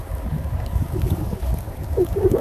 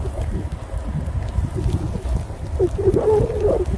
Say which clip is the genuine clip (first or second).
second